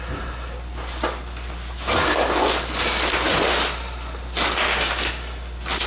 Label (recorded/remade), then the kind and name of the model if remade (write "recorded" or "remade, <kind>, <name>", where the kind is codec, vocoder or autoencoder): recorded